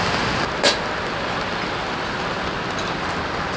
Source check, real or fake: real